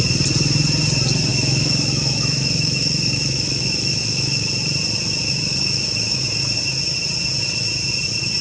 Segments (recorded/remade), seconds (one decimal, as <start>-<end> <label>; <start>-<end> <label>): 0.0-1.3 recorded; 1.3-4.5 remade; 4.5-5.5 recorded; 5.5-6.2 remade; 6.2-8.4 recorded